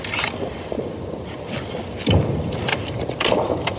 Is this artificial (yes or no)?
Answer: no